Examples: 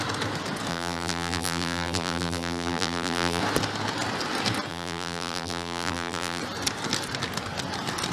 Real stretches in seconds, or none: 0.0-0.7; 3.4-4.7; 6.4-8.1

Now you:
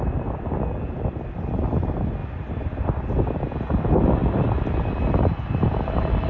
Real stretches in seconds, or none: 0.0-4.2; 4.7-6.3

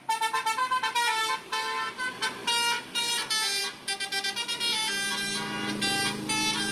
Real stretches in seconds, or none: 0.0-6.7

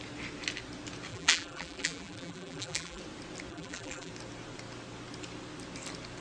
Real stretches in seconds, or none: 0.0-1.1; 3.0-3.5; 4.1-6.2

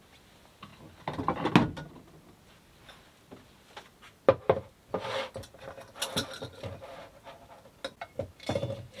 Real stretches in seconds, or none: 0.0-9.0

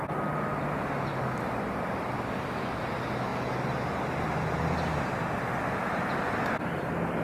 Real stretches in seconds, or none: 0.0-7.2